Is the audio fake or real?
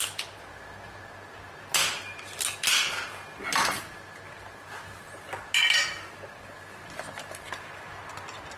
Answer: real